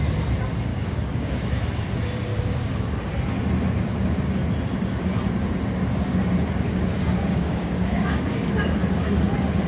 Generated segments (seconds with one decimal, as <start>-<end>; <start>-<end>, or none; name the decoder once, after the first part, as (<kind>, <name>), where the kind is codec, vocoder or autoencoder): 0.7-1.5 (codec, DAC); 2.3-3.0; 7.0-8.8